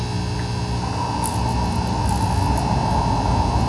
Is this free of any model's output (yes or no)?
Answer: yes